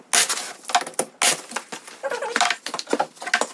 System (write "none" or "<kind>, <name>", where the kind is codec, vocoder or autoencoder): none